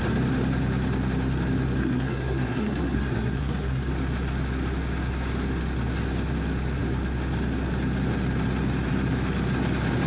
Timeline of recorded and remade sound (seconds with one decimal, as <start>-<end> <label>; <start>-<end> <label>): 0.0-1.8 recorded; 1.8-3.9 remade; 3.9-10.1 recorded